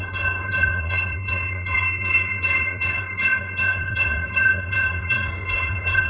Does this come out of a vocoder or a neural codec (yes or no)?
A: yes